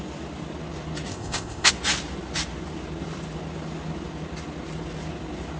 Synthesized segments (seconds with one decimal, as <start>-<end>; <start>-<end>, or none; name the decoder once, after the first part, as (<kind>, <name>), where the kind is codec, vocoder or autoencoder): 1.1-1.7 (codec, ZipCodec)